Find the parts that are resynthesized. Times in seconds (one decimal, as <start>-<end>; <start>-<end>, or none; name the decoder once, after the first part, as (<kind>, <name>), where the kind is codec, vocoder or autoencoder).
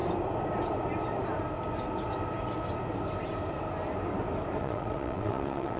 4.6-5.8 (vocoder, WaveNeXt)